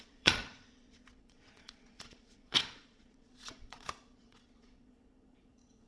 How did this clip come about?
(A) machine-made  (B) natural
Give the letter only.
A